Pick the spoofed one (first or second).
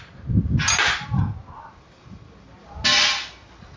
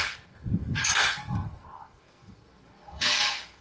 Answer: second